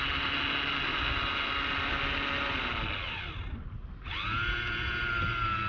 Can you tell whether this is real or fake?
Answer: real